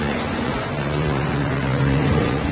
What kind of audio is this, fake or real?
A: fake